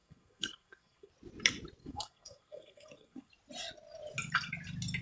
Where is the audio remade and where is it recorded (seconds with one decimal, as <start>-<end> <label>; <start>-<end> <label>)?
0.0-1.1 remade; 1.1-1.8 recorded; 1.8-3.3 remade; 3.3-5.0 recorded